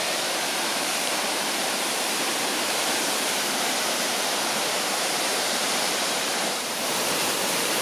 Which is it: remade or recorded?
remade